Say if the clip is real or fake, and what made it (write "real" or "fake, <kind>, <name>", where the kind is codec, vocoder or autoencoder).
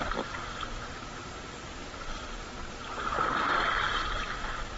fake, vocoder, BigVGAN v2